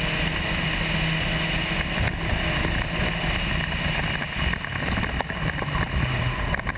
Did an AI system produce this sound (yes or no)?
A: no